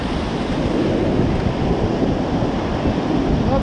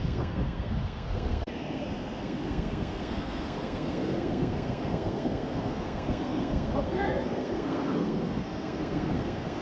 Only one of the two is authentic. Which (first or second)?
first